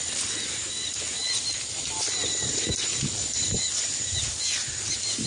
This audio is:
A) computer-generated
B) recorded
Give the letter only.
B